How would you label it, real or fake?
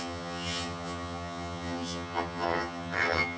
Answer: fake